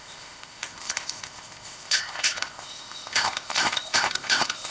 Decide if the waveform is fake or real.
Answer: fake